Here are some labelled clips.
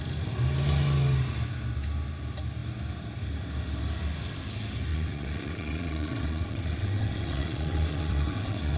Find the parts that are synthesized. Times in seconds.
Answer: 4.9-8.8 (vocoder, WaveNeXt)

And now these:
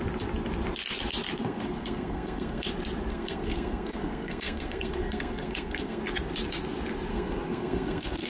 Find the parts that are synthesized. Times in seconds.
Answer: 1.4-2.7 (codec, SNAC); 3.1-6.0; 7.1-8.3